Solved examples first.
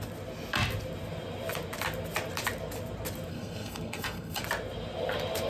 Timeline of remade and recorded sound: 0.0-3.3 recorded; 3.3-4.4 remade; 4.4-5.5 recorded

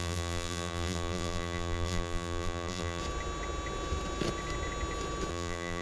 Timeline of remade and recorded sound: 0.0-3.0 remade; 3.0-5.3 recorded; 5.3-5.8 remade